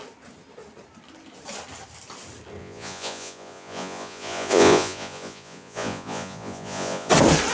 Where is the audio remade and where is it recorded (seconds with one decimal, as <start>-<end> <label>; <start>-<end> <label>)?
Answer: 0.0-2.6 recorded; 2.6-7.1 remade; 7.1-7.5 recorded